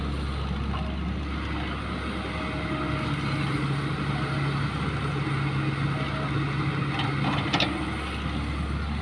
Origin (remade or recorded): recorded